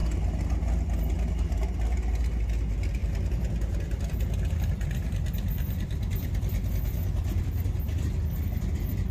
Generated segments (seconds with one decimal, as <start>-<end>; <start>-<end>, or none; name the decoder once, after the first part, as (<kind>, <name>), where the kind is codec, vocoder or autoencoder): 3.0-7.4 (vocoder, BigVGAN v2)

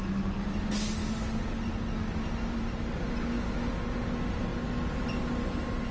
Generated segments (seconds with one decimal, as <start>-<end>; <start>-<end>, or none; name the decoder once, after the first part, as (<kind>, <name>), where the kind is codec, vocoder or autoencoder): none

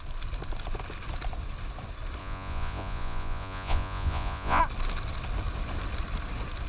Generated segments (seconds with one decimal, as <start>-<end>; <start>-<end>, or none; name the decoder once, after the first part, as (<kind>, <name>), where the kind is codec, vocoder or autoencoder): 2.2-4.6 (vocoder, Vocos)

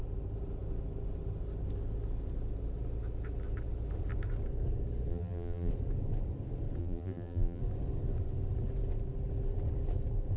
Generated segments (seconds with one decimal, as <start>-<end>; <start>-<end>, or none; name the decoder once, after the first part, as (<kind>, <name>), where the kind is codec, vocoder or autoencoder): 5.1-5.7 (vocoder, BigVGAN v2); 6.8-7.6

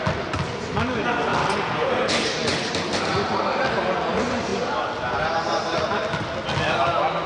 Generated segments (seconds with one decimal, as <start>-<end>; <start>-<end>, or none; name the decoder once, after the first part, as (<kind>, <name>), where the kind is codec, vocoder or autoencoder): 0.0-1.3 (vocoder, BigVGAN v2); 2.0-2.5; 4.1-4.5

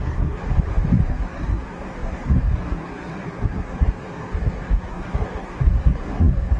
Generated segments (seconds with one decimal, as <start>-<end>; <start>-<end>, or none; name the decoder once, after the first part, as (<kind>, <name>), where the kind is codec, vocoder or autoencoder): 0.0-0.5 (codec, SNAC); 1.1-6.6

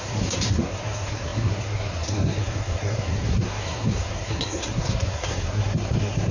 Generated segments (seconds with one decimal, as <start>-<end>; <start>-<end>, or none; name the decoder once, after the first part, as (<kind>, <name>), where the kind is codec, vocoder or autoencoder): 0.0-6.3 (codec, SNAC)